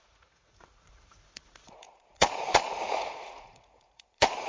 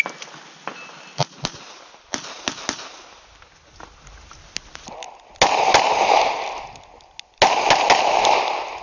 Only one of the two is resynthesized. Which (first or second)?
first